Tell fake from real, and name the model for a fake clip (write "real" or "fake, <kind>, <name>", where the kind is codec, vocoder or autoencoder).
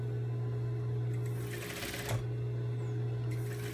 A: real